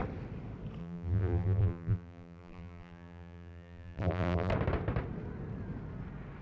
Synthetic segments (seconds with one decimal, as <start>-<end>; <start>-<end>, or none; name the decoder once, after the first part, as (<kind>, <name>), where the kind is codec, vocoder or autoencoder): 0.8-4.5 (vocoder, BigVGAN v2)